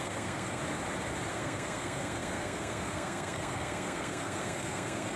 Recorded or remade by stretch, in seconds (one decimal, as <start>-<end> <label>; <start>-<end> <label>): 0.0-0.6 remade; 0.6-1.3 recorded; 1.3-5.2 remade